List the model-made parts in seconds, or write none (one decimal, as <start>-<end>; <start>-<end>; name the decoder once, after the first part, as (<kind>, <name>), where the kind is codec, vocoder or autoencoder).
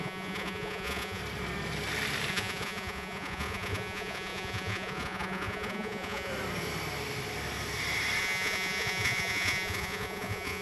0.0-1.2 (vocoder, Vocos); 2.3-6.3; 8.2-10.6